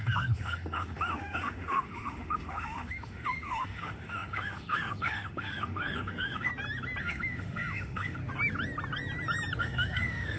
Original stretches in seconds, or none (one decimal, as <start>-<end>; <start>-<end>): 6.5-7.0; 8.2-9.6